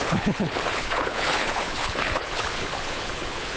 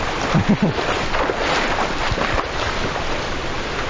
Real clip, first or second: second